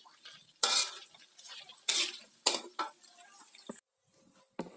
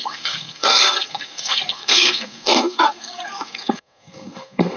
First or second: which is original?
first